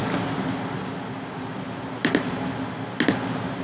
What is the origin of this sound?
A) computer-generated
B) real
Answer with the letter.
B